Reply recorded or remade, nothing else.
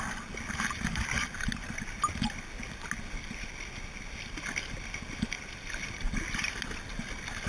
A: recorded